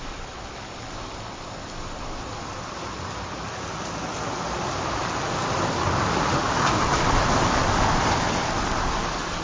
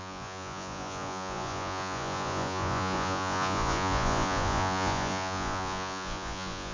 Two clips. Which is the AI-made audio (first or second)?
second